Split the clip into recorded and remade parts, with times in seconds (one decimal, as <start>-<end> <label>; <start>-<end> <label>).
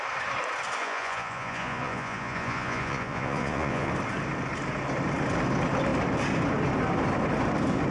0.0-0.8 recorded; 0.8-3.9 remade; 3.9-7.9 recorded